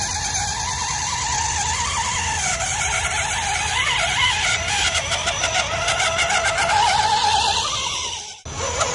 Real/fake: real